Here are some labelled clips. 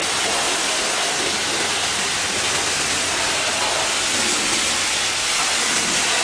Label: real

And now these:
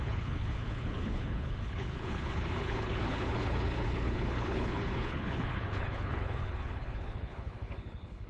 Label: fake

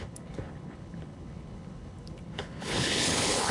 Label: fake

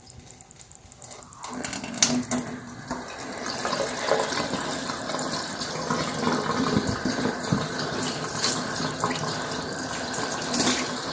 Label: real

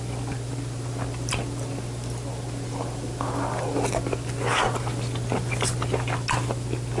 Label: real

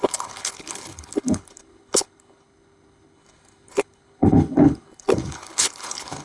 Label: fake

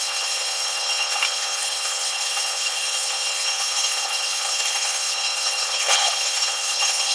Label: fake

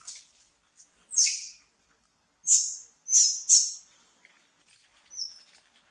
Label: real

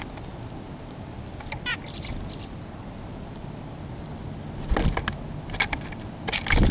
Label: real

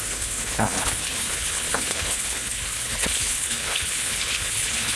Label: fake